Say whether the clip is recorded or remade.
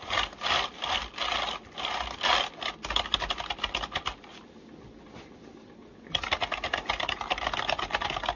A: recorded